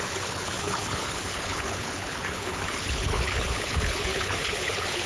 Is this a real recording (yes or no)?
no